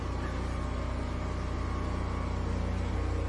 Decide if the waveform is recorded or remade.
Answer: recorded